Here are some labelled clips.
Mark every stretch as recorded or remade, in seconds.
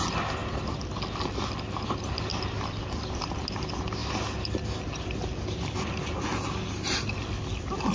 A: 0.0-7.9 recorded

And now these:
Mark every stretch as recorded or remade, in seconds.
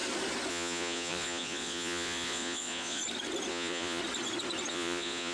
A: 0.0-0.5 recorded; 0.5-3.0 remade; 3.0-3.5 recorded; 3.5-4.0 remade; 4.0-4.7 recorded; 4.7-5.3 remade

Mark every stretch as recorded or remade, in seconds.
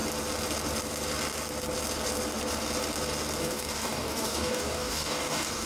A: 0.0-3.4 recorded; 3.4-5.7 remade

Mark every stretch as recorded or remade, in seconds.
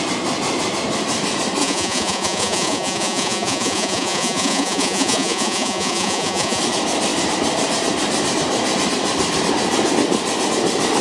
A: 0.0-1.6 recorded; 1.6-6.6 remade; 6.6-11.0 recorded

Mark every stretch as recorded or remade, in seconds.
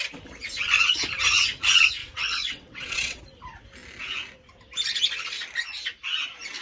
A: 0.0-2.0 recorded; 2.0-3.2 remade; 3.2-6.6 recorded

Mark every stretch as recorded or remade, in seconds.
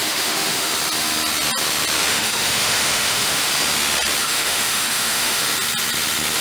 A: 0.0-0.7 remade; 0.7-2.1 recorded; 2.1-3.5 remade; 3.5-4.2 recorded; 4.2-5.4 remade; 5.4-6.4 recorded